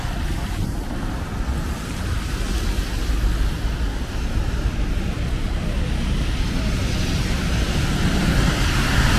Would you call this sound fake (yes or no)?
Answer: no